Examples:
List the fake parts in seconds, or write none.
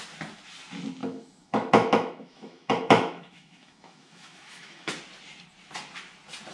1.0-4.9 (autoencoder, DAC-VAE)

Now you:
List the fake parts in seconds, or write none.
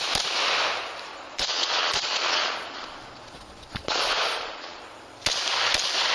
1.1-4.8 (vocoder, Vocos)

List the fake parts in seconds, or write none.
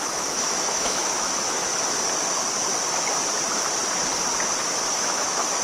0.0-1.7 (autoencoder, DAC-VAE); 5.0-5.6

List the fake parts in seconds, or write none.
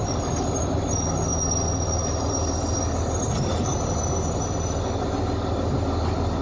none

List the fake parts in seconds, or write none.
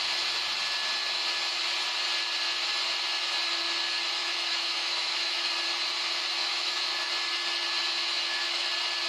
4.2-5.5 (autoencoder, DAC-VAE); 6.4-7.1; 7.8-8.7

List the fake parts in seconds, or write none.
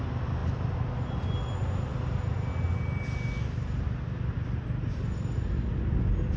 none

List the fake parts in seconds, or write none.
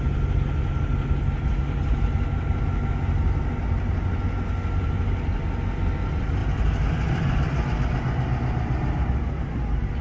none